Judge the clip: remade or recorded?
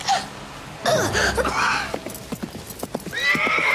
recorded